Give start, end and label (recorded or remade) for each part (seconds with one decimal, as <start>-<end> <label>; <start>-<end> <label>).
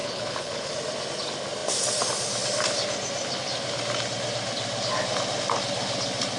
0.0-0.7 remade; 0.7-6.4 recorded